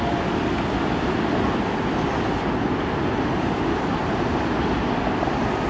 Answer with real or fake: real